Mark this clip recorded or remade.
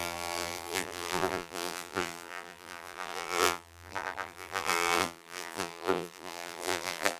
remade